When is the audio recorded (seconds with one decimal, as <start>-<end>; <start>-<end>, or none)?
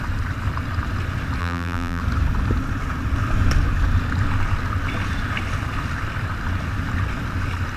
0.0-1.4; 2.0-7.8